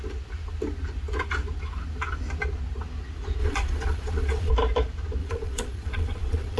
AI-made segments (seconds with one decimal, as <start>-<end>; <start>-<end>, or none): 3.4-4.5; 5.2-6.6